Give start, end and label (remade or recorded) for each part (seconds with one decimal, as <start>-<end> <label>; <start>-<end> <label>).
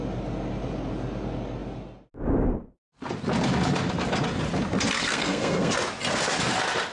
0.0-5.0 recorded; 5.0-5.7 remade; 5.7-6.9 recorded